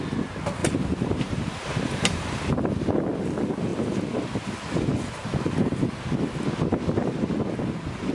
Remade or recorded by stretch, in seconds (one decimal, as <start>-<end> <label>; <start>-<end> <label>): 0.0-0.6 recorded; 0.6-2.5 remade; 2.5-8.1 recorded